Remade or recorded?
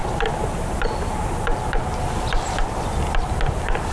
recorded